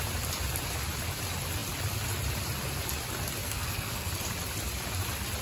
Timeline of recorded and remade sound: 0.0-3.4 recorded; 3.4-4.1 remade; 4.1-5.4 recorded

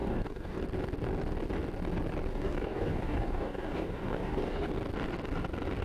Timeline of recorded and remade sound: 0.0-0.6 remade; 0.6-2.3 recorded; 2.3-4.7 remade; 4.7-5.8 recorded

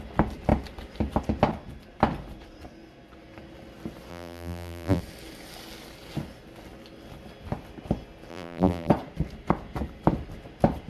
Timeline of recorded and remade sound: 0.0-4.1 recorded; 4.1-5.0 remade; 5.0-8.3 recorded; 8.3-8.9 remade; 8.9-10.9 recorded

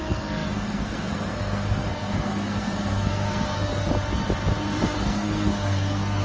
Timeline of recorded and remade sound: 0.0-3.7 remade; 3.7-4.8 recorded; 4.8-6.2 remade

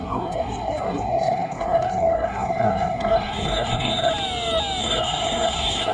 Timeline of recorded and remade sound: 0.0-4.1 remade; 4.1-4.8 recorded; 4.8-5.9 remade

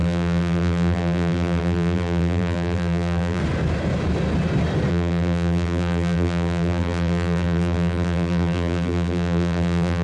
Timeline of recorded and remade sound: 0.0-3.4 remade; 3.4-4.9 recorded; 4.9-10.0 remade

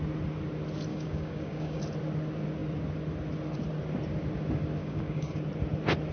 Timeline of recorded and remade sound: 0.0-0.9 recorded; 0.9-1.8 remade; 1.8-4.8 recorded; 4.8-5.4 remade; 5.4-6.1 recorded

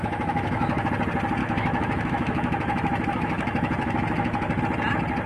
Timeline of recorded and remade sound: 0.0-0.9 remade; 0.9-1.4 recorded; 1.4-4.6 remade; 4.6-5.3 recorded